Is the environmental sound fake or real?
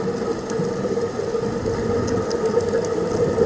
real